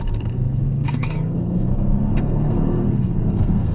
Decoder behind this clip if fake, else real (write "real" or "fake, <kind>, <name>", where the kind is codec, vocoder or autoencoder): fake, codec, SNAC